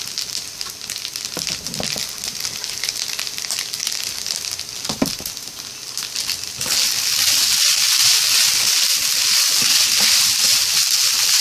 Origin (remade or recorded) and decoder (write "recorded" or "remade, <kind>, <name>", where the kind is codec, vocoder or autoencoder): recorded